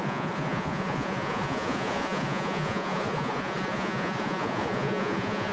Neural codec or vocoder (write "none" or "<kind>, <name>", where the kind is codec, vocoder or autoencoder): vocoder, Vocos